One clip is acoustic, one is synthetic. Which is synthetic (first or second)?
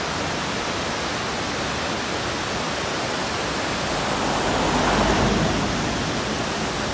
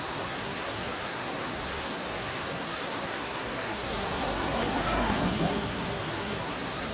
second